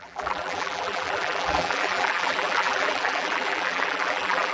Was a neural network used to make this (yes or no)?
yes